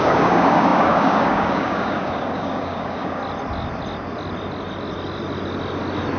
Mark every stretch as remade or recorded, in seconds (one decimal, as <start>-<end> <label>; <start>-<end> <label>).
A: 0.0-3.2 remade; 3.2-6.2 recorded